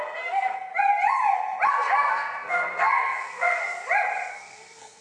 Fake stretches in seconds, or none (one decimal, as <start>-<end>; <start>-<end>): 0.0-0.7; 1.7-3.6; 4.3-5.0

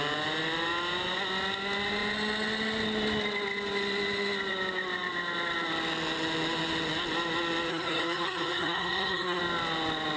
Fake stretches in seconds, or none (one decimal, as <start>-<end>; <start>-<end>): 7.7-9.4